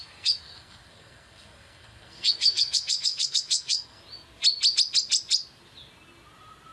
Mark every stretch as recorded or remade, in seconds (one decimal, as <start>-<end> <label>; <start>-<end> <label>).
0.0-4.0 remade; 4.0-6.7 recorded